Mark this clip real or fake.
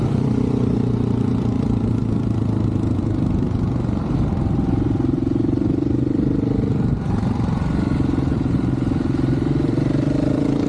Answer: fake